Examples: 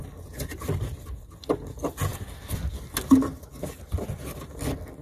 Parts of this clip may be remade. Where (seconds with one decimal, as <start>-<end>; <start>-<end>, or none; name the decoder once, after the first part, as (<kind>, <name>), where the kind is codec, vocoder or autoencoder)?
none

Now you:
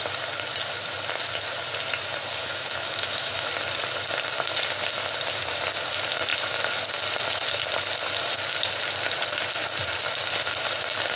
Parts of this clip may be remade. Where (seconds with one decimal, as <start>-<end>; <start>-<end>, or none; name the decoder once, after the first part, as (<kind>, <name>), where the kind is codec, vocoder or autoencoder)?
2.4-3.5 (autoencoder, DAC-VAE)

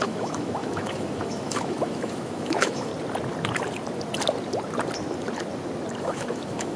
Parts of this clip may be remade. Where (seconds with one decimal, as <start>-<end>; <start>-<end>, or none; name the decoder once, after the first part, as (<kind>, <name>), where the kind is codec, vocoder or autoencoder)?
0.0-2.9 (autoencoder, DAC-VAE); 6.0-6.8

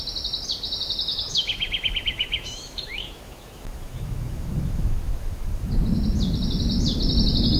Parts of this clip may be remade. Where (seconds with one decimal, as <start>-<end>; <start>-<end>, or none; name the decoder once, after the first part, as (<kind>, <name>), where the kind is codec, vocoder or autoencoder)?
1.1-5.7 (autoencoder, DAC-VAE)

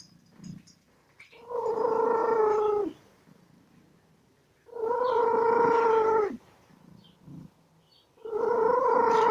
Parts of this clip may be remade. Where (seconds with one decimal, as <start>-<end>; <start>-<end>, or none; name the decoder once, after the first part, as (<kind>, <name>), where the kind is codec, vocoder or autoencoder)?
none

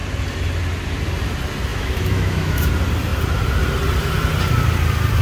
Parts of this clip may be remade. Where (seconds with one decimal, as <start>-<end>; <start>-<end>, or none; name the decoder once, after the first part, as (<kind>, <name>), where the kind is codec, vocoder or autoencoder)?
1.7-2.7 (autoencoder, DAC-VAE)

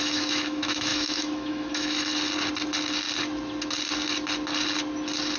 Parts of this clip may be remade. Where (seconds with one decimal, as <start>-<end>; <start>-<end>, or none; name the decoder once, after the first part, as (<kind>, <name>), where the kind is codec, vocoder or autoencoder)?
0.0-2.1 (autoencoder, DAC-VAE)